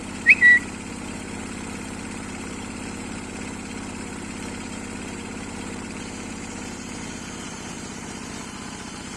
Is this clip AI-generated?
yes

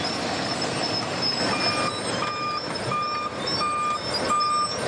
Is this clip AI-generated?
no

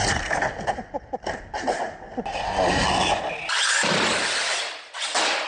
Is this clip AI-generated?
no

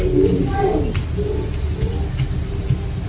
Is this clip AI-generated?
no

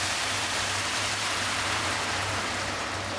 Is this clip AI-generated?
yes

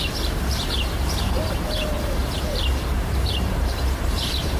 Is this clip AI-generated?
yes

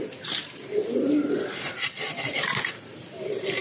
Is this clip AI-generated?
yes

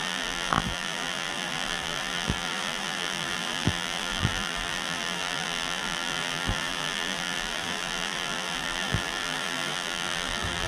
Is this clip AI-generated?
yes